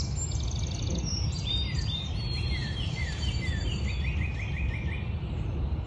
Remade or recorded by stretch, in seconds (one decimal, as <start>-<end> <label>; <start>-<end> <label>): 0.0-1.1 recorded; 1.1-1.9 remade; 1.9-2.6 recorded; 2.6-3.3 remade; 3.3-5.9 recorded